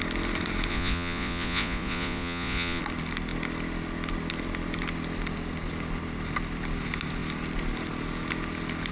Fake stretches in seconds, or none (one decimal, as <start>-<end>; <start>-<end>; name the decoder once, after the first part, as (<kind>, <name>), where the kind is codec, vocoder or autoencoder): 0.7-2.8 (vocoder, Vocos)